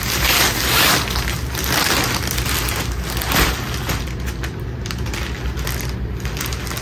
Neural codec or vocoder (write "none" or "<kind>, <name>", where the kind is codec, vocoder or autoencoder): none